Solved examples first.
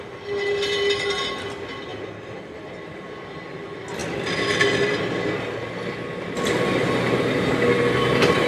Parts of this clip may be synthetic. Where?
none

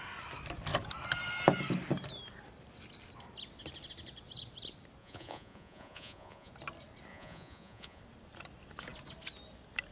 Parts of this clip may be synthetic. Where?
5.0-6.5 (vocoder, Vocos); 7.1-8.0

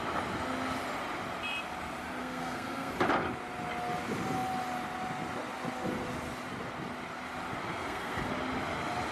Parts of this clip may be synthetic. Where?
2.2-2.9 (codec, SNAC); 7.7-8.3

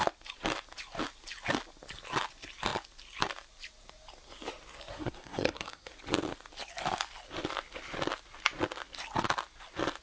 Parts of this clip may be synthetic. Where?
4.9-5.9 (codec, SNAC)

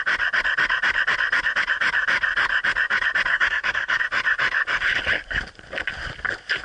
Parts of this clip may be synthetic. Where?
3.3-4.0 (codec, SNAC)

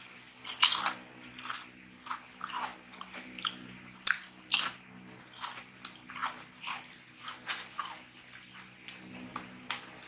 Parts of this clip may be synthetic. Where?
none